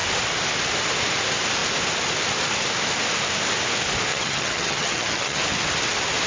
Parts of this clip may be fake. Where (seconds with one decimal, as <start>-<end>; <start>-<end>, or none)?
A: 4.1-5.4

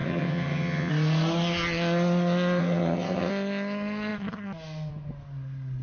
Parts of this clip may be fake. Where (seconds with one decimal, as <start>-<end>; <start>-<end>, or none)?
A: 0.0-0.9; 2.6-3.3

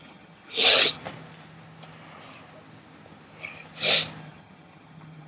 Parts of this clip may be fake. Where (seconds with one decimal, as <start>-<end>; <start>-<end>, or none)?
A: 0.0-1.0; 4.2-5.3